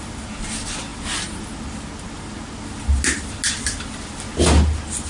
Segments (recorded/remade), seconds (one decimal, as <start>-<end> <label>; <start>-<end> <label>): 0.0-5.1 recorded